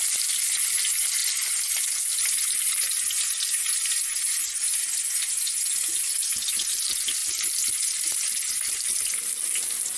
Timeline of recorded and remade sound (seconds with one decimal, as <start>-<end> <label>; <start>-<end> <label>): 0.0-10.0 recorded